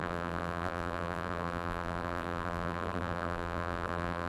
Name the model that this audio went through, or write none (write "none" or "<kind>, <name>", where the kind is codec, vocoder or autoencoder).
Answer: vocoder, BigVGAN v2